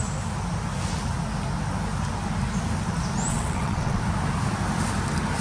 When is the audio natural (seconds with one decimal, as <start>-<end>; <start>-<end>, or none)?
0.0-3.3; 4.0-5.4